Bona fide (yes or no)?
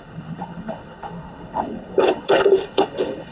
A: no